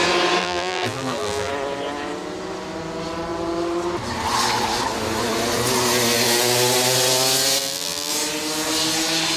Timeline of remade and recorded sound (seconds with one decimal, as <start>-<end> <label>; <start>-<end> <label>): 0.0-0.4 recorded; 0.4-1.5 remade; 1.5-7.6 recorded; 7.6-8.1 remade; 8.1-9.4 recorded